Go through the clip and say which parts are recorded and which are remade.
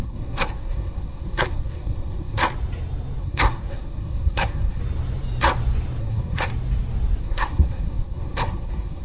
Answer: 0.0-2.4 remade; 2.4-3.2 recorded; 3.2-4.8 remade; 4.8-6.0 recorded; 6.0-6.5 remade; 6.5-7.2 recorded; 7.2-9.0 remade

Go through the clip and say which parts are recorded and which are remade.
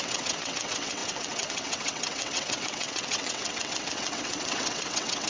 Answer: 0.0-5.3 remade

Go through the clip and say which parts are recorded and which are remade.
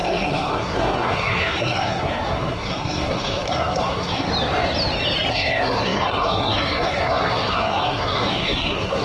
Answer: 0.0-4.3 remade; 4.3-5.3 recorded; 5.3-9.0 remade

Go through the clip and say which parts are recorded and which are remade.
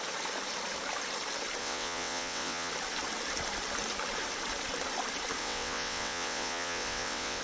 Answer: 0.0-1.6 recorded; 1.6-2.7 remade; 2.7-5.4 recorded; 5.4-7.4 remade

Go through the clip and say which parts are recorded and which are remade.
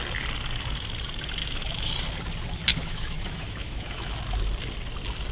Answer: 0.0-1.4 recorded; 1.4-1.9 remade; 1.9-2.7 recorded; 2.7-4.1 remade; 4.1-5.3 recorded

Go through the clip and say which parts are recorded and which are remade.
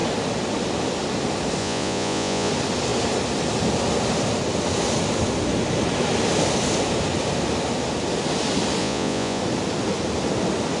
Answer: 0.0-1.6 recorded; 1.6-2.5 remade; 2.5-8.8 recorded; 8.8-9.4 remade; 9.4-10.8 recorded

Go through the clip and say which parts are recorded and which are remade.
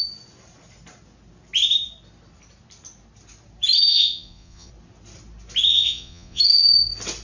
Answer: 0.0-3.9 recorded; 3.9-4.7 remade; 4.7-5.7 recorded; 5.7-6.4 remade; 6.4-7.2 recorded